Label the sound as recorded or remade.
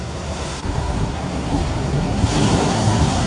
remade